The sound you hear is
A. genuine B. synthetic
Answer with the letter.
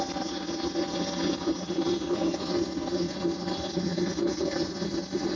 A